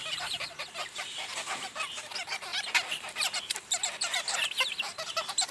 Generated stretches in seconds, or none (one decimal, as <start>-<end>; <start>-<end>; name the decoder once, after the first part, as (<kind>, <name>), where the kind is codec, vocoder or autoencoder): 0.0-0.7 (vocoder, BigVGAN v2); 2.5-3.6